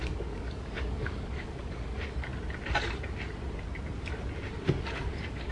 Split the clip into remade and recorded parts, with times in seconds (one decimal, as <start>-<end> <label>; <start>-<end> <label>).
0.0-2.3 remade; 2.3-4.8 recorded; 4.8-5.5 remade